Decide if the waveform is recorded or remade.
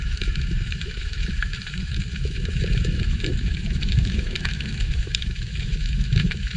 remade